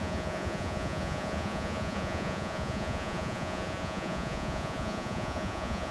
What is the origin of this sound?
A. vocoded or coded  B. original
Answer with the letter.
A